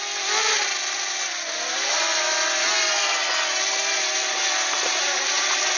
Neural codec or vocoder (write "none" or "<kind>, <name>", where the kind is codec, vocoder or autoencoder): none